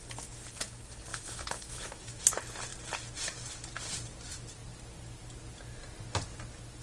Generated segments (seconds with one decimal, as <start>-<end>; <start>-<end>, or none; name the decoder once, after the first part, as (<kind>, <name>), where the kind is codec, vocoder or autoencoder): 1.1-2.2 (autoencoder, DAC-VAE)